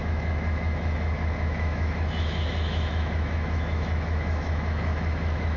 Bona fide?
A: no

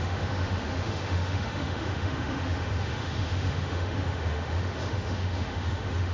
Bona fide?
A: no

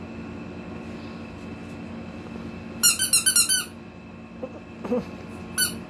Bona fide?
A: yes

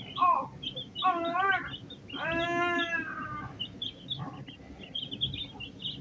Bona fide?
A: yes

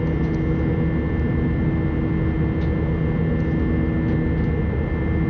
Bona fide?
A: yes